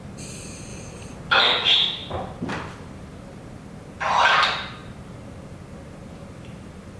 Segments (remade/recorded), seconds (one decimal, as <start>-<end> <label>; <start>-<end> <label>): 0.0-2.0 recorded; 2.0-3.4 remade; 3.4-4.8 recorded; 4.8-5.4 remade; 5.4-6.0 recorded; 6.0-7.0 remade